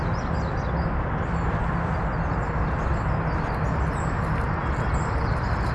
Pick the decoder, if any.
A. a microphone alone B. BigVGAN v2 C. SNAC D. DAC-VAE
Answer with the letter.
A